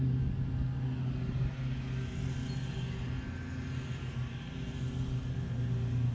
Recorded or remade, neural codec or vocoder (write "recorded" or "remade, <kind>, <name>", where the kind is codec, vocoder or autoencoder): recorded